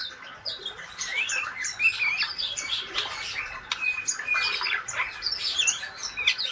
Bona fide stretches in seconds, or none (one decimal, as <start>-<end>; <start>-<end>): 3.4-6.5

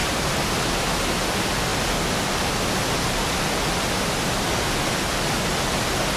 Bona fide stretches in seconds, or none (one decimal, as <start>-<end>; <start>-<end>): 0.6-6.2

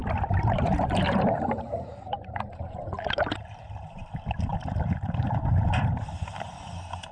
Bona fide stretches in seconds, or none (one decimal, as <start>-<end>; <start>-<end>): 4.1-4.5; 5.5-7.1

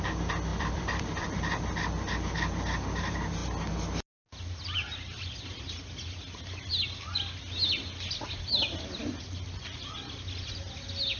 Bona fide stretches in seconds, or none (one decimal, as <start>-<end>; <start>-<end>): 0.0-0.5; 1.4-11.2

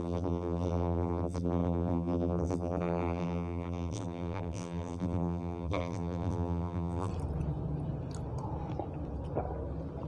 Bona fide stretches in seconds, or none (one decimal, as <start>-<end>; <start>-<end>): 7.1-10.1